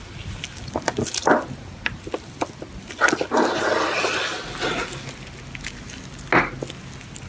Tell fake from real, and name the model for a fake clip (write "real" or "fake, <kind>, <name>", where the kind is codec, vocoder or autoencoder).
real